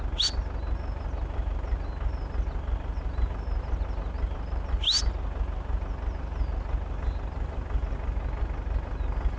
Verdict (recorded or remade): recorded